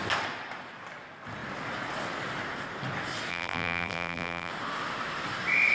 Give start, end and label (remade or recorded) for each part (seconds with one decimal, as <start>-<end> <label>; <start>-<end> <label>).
0.0-3.3 recorded; 3.3-4.5 remade; 4.5-5.7 recorded